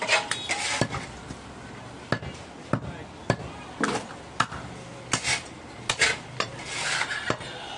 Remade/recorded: recorded